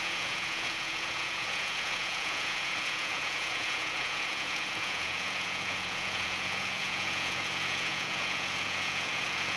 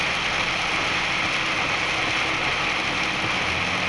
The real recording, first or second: second